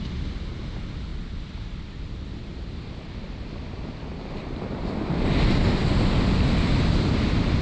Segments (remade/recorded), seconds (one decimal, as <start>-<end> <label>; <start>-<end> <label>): 0.0-1.1 recorded; 1.1-2.5 remade; 2.5-7.6 recorded